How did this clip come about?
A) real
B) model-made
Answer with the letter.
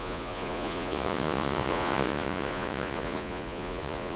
B